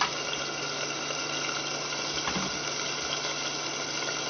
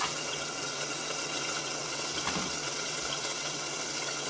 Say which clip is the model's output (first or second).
second